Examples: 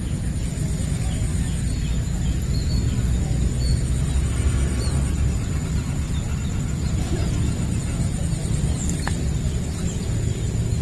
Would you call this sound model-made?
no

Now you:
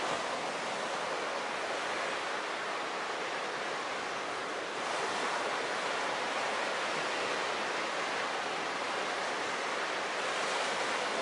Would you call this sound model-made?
no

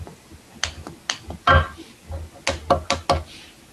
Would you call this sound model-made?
no